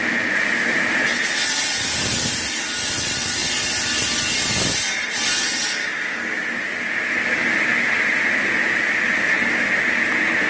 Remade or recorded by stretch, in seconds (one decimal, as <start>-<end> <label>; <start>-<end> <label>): 0.0-5.8 recorded; 5.8-6.4 remade; 6.4-10.5 recorded